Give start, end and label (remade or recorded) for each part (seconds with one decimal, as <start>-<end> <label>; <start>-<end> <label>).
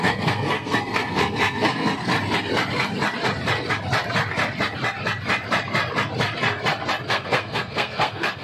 0.0-2.1 remade; 2.1-7.1 recorded; 7.1-8.4 remade